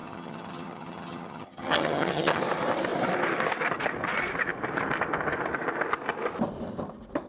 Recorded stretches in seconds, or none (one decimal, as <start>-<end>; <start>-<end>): 2.4-7.3